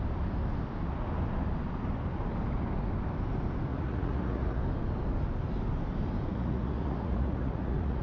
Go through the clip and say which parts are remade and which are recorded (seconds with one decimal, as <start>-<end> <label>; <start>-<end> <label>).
0.0-3.7 recorded; 3.7-4.6 remade; 4.6-6.3 recorded; 6.3-8.0 remade